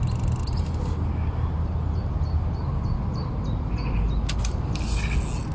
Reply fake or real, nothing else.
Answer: real